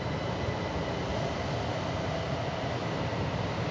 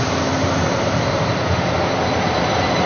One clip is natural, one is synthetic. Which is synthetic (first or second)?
second